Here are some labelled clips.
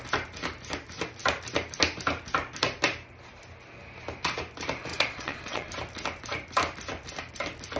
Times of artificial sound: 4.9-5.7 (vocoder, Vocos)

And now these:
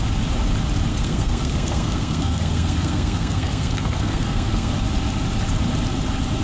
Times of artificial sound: 0.9-4.7 (codec, SNAC)